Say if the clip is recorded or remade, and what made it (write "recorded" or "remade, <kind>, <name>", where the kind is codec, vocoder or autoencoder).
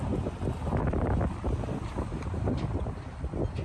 recorded